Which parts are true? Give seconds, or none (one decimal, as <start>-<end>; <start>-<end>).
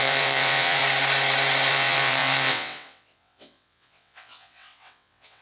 0.8-1.7